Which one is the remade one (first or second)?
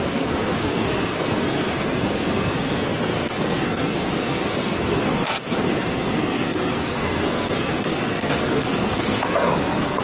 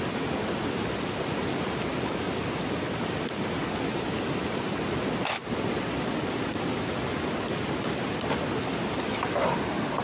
first